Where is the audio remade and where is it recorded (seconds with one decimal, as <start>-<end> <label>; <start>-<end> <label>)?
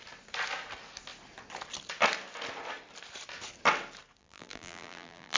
0.0-4.2 recorded; 4.2-5.4 remade